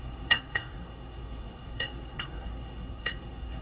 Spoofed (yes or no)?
yes